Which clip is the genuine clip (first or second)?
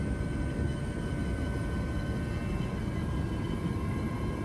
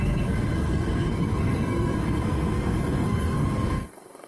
first